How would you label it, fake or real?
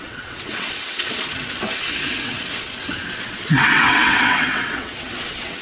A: fake